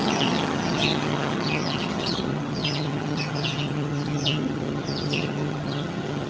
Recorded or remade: remade